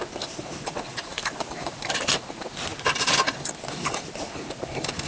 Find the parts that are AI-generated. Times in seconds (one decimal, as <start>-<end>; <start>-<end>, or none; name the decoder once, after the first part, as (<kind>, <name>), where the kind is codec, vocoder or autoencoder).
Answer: 1.1-2.2 (vocoder, BigVGAN v2)